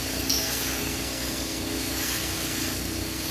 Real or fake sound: fake